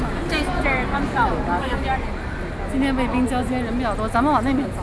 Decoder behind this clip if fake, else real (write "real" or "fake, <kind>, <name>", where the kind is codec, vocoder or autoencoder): real